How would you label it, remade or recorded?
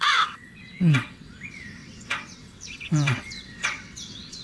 remade